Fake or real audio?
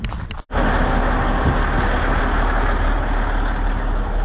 real